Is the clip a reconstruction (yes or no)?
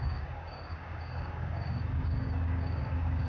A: yes